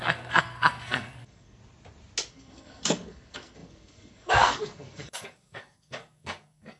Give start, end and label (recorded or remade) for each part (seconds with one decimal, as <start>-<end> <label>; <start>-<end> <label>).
0.0-1.6 remade; 1.6-2.3 recorded; 2.3-6.8 remade